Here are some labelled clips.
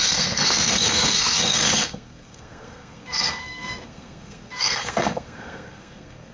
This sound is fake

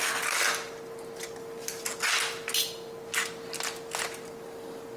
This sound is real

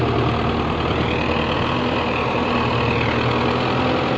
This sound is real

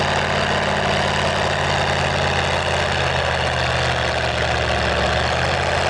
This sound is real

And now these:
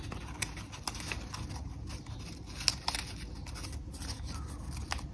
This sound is real